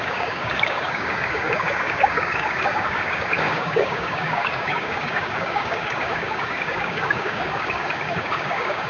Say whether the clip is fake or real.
fake